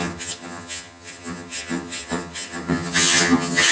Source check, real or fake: fake